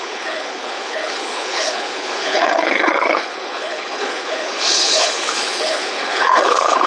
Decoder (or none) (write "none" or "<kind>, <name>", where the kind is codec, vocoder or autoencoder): codec, HILCodec